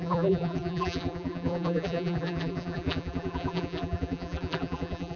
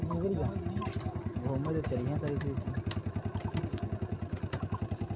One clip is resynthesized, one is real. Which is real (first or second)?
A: second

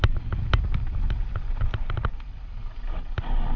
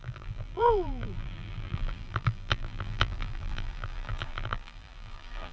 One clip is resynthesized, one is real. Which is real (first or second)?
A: first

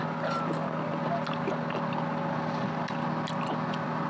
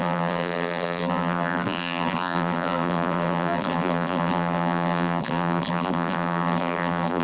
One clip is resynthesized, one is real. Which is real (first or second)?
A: first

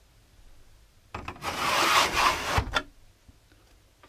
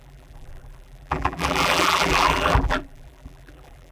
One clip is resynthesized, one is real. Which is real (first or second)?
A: first